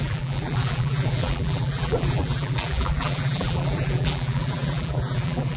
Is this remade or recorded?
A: remade